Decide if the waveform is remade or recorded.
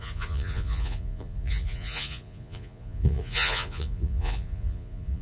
remade